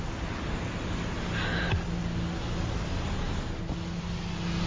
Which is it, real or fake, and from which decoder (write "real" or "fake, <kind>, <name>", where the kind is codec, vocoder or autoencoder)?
real